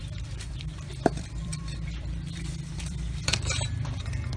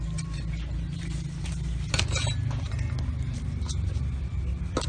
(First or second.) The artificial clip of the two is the first